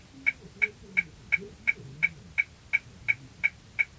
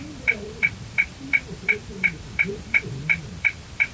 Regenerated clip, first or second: second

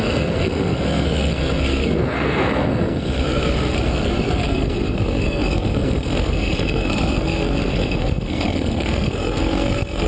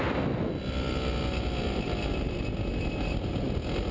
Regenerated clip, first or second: first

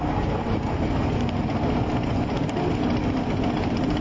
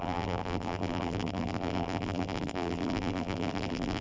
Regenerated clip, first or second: second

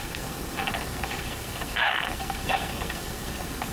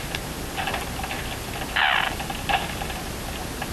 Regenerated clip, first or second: first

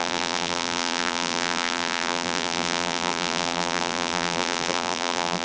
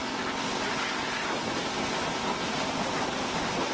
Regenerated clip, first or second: first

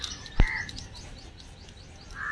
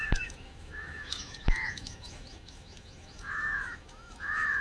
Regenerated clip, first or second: second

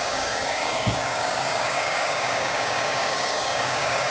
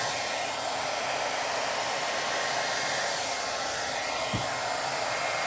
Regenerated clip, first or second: first